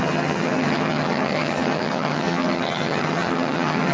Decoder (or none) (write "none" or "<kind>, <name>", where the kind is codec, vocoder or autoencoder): vocoder, HiFi-GAN